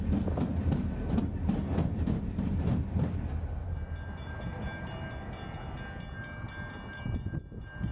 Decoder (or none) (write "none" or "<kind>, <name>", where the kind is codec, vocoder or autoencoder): none